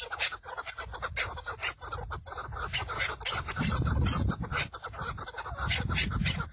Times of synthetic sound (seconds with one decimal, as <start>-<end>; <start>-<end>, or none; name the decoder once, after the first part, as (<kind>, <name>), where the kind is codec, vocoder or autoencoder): none